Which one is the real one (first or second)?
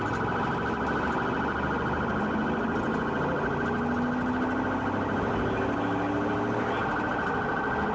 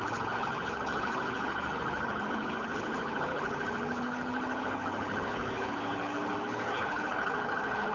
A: first